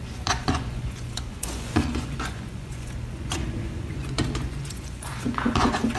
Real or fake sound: fake